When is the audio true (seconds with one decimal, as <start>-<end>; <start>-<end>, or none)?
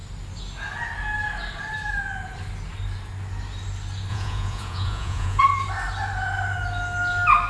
0.0-4.1; 5.4-7.5